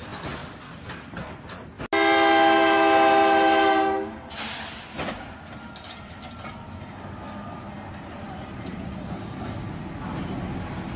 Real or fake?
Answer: real